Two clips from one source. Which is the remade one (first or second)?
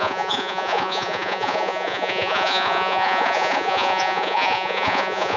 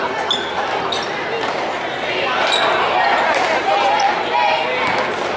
first